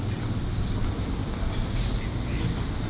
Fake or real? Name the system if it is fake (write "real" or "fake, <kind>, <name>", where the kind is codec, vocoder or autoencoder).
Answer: real